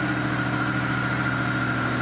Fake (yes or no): no